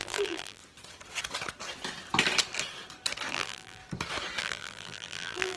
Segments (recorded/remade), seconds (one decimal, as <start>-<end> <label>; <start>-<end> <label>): 0.0-0.6 remade; 0.6-3.3 recorded; 3.3-3.8 remade; 3.8-4.4 recorded; 4.4-5.6 remade